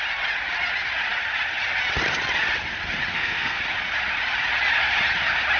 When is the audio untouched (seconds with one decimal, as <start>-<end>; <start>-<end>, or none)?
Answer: 0.0-3.1; 3.6-5.6